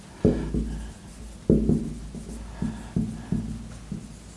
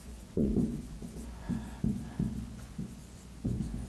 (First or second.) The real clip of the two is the first